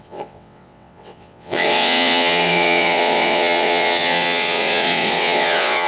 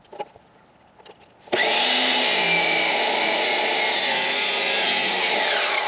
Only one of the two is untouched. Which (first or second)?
second